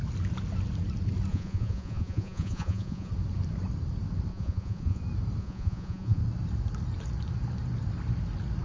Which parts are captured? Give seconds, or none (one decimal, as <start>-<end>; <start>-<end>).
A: 0.0-1.3; 3.1-4.3; 5.0-5.4; 6.2-8.6